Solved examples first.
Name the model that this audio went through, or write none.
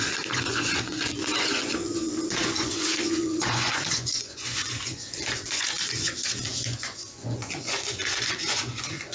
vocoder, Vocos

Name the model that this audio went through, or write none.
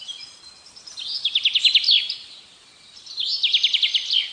none